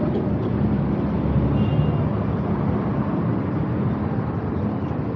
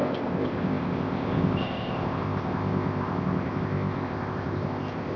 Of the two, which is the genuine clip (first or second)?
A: first